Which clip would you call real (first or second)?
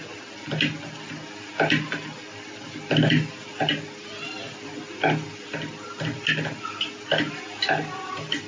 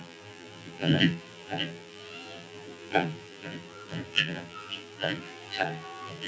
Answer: first